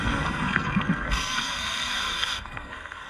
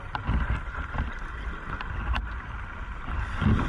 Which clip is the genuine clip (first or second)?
second